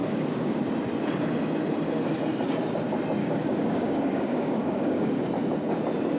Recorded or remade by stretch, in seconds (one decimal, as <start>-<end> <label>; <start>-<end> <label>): 0.0-0.6 remade; 0.6-3.2 recorded; 3.2-5.2 remade; 5.2-6.2 recorded